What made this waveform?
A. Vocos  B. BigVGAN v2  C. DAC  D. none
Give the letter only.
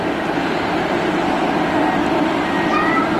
D